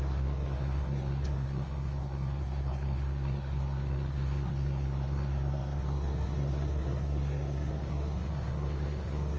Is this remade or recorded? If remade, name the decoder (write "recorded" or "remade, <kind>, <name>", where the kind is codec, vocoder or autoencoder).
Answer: remade, codec, SNAC